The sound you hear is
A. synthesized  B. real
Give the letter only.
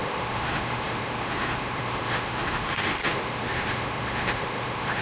A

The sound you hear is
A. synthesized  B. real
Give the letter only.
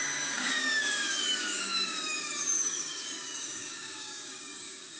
A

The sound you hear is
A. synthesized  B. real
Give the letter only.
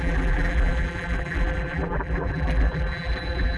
A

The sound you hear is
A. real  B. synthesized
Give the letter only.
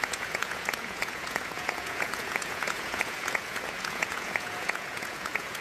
B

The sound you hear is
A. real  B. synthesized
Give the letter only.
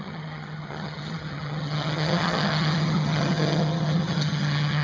B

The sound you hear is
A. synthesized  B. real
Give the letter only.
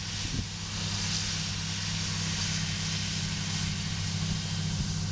B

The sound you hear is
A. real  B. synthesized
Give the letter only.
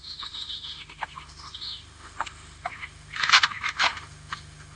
B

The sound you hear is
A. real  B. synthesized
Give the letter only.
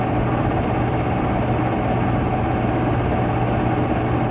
A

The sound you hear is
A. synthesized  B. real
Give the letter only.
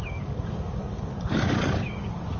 A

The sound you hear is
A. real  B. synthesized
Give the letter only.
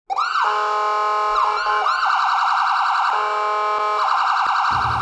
A